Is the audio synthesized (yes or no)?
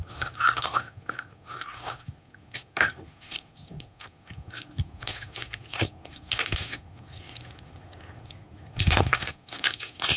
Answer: yes